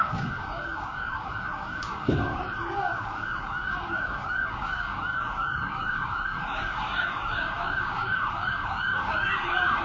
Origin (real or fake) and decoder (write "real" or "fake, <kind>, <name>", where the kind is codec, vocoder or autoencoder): fake, codec, DAC